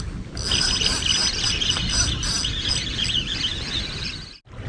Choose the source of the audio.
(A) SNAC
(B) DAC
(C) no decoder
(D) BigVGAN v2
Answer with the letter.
C